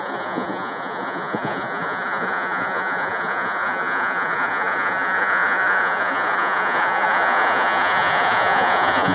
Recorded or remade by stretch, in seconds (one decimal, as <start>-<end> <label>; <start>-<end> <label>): 0.0-9.1 remade